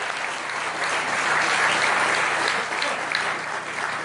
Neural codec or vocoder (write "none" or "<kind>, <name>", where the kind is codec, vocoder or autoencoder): none